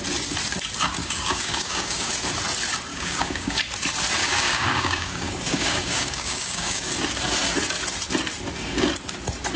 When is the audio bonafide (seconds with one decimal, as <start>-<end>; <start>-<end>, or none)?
0.0-1.0; 2.1-2.9; 3.6-4.2; 6.9-9.6